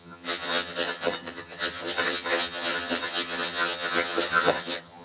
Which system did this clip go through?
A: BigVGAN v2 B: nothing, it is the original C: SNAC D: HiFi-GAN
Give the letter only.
D